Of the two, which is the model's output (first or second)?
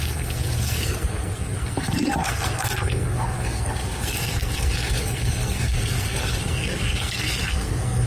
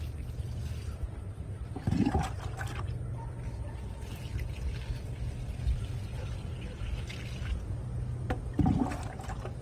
first